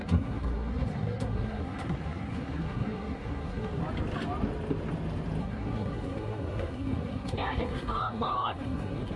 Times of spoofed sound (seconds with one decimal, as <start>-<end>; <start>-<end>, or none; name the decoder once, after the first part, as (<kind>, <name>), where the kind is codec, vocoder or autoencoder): 0.0-3.8 (codec, SNAC); 5.4-9.2